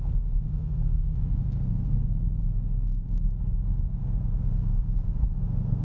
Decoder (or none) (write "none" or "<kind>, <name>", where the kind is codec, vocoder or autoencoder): codec, SNAC